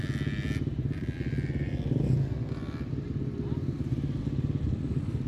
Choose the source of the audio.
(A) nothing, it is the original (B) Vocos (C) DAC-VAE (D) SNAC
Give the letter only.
A